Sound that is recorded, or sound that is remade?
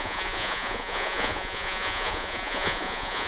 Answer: remade